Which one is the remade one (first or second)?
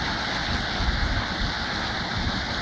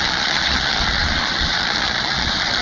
second